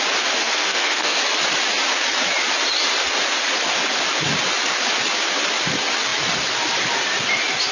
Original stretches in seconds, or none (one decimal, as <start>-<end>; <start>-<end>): 0.0-0.4; 1.2-7.7

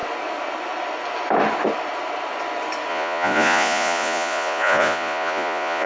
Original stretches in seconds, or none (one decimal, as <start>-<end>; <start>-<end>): 0.0-2.9